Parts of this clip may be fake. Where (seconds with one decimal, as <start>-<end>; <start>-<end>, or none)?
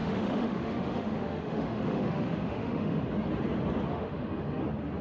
0.0-3.0; 3.9-4.6